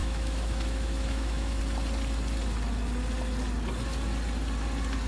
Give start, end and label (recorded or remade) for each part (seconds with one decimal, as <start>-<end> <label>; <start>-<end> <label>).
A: 0.0-1.6 remade; 1.6-5.1 recorded